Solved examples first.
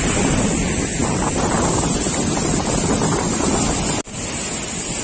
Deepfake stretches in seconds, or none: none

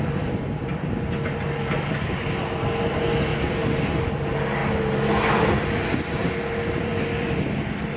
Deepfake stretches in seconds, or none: 0.0-3.3 (vocoder, BigVGAN v2); 4.0-4.6; 5.3-8.0

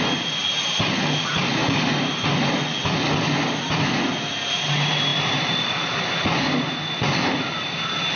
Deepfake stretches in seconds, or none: none

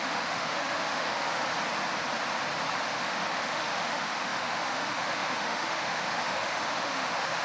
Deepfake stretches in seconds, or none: 0.0-1.4 (autoencoder, DAC-VAE); 3.0-7.4

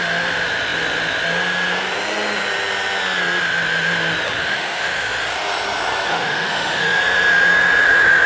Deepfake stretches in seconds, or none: 4.4-5.0 (autoencoder, DAC-VAE); 6.1-7.0